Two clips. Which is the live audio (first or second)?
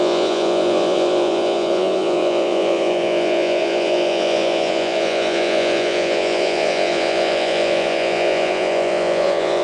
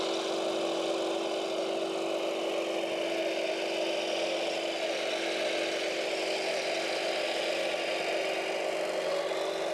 second